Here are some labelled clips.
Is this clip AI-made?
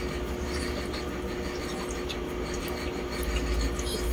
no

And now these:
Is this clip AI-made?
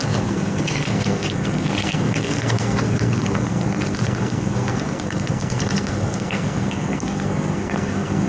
yes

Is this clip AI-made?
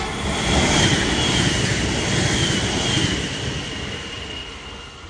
no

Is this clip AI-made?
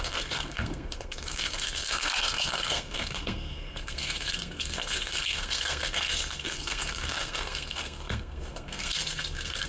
yes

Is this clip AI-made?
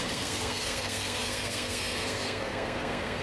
yes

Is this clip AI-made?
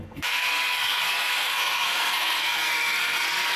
yes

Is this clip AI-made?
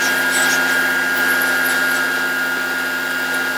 no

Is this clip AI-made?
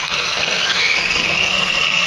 yes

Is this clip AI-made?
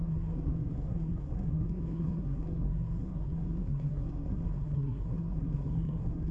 yes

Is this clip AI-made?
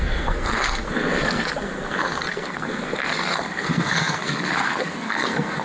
yes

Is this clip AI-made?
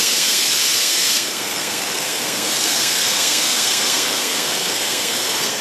yes